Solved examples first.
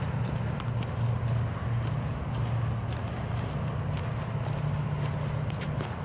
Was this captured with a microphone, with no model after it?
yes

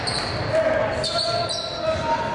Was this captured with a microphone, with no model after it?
yes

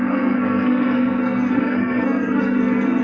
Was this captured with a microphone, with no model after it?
no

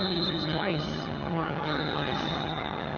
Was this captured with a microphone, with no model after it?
no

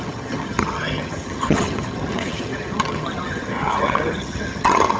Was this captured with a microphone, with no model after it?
no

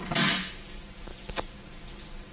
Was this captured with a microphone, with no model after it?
yes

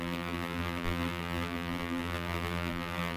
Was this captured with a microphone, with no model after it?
no